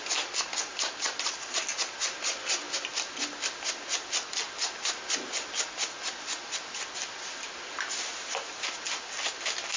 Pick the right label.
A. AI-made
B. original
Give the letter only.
B